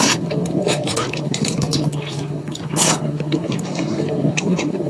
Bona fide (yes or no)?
no